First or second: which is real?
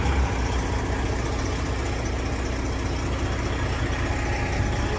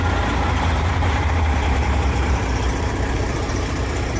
first